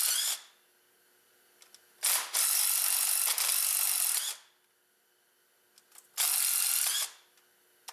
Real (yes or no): yes